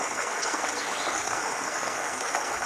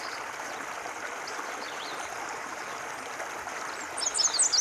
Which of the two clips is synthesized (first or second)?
first